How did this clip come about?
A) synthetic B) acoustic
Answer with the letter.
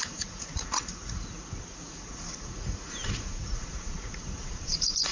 A